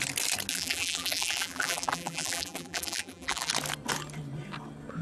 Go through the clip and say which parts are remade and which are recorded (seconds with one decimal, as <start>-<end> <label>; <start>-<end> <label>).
0.0-0.5 recorded; 0.5-3.5 remade; 3.5-5.0 recorded